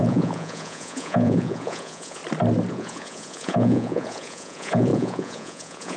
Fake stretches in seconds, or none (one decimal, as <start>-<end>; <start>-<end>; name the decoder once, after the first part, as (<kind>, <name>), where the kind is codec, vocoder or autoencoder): 0.0-2.2 (vocoder, Vocos); 2.7-6.0